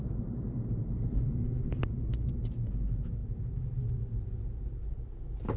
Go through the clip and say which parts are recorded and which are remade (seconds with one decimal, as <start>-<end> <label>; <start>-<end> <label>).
0.0-2.4 remade; 2.4-5.6 recorded